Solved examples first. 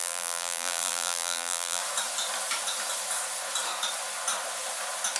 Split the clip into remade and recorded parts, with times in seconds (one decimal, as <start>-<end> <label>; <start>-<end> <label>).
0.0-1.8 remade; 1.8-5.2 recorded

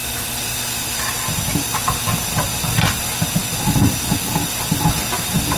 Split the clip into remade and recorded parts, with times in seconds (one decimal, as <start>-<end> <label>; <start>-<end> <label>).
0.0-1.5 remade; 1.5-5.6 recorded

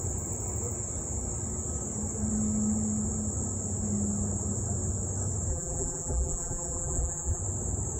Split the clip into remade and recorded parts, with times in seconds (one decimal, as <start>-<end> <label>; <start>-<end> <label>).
0.0-5.5 recorded; 5.5-7.4 remade; 7.4-8.0 recorded

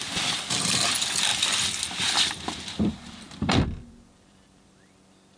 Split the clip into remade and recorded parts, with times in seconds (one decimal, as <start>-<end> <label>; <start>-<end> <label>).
0.0-5.4 remade